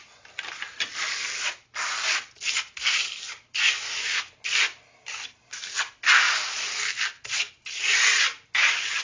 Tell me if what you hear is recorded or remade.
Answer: recorded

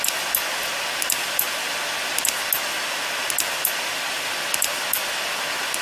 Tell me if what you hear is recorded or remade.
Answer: recorded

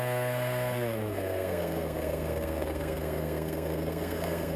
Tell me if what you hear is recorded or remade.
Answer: remade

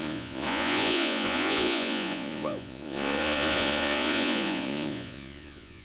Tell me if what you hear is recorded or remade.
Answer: remade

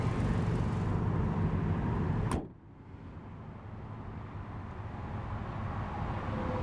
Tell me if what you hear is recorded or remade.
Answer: recorded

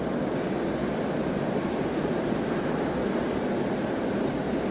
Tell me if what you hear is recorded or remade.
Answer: recorded